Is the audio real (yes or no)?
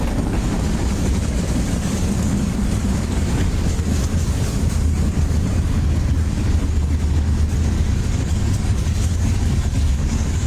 no